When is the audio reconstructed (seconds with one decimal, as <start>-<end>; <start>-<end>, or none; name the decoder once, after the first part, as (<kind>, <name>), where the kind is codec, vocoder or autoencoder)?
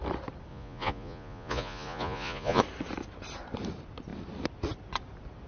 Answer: 0.5-2.6 (vocoder, Vocos)